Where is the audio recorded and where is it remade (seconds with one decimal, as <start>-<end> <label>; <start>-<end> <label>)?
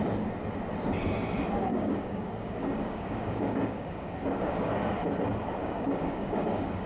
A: 0.0-1.7 recorded; 1.7-4.7 remade; 4.7-5.6 recorded; 5.6-6.9 remade